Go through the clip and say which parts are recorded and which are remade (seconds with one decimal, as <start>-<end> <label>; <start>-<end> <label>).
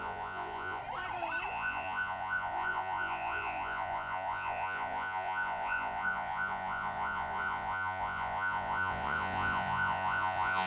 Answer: 0.0-0.8 remade; 0.8-1.5 recorded; 1.5-10.7 remade